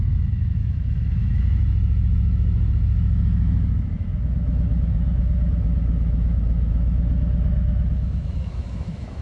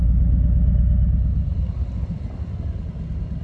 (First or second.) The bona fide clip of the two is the second